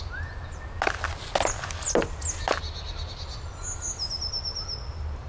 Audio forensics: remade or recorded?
recorded